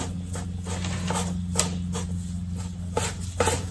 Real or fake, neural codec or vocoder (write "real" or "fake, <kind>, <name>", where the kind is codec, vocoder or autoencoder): real